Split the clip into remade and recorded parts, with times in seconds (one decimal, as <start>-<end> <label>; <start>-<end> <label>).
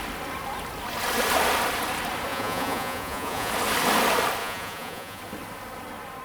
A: 0.0-2.3 recorded; 2.3-3.5 remade; 3.5-4.4 recorded; 4.4-5.2 remade; 5.2-6.2 recorded